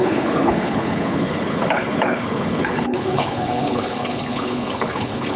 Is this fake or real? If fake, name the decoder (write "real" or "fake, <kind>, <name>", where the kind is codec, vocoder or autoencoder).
fake, codec, HILCodec